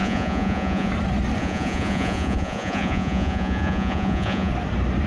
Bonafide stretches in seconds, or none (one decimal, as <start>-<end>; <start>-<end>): 0.9-1.4; 4.5-5.1